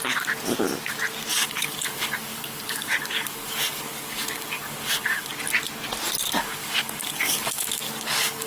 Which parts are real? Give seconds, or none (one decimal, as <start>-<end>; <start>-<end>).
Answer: 0.0-1.3; 5.3-6.2